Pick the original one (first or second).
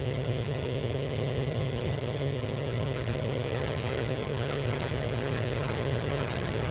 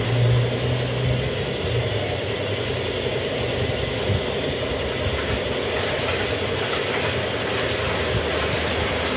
second